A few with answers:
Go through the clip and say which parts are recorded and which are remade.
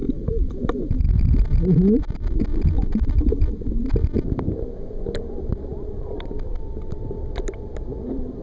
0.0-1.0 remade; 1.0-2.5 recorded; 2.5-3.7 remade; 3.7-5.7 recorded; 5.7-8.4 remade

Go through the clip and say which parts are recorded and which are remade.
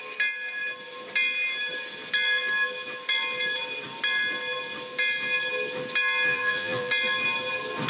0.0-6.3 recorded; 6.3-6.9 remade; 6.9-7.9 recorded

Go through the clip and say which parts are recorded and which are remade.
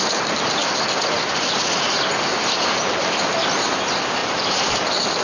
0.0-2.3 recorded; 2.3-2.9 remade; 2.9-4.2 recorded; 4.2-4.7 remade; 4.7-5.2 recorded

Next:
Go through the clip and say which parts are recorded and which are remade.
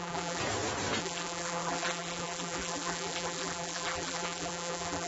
0.0-0.4 remade; 0.4-1.0 recorded; 1.0-5.1 remade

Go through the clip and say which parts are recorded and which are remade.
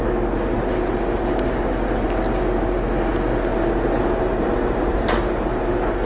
0.0-3.5 recorded; 3.5-5.6 remade; 5.6-6.1 recorded